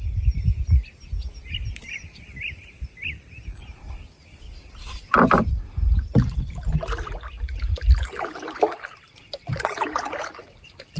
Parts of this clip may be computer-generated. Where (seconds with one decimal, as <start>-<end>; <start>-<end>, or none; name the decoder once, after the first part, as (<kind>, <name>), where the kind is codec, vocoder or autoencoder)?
none